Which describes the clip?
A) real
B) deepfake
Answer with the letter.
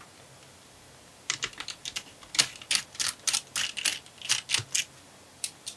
A